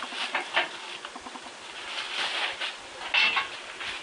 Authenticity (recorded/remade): recorded